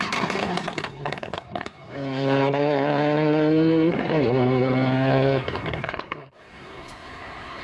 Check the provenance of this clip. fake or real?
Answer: fake